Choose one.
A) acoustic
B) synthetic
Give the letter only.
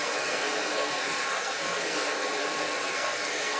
B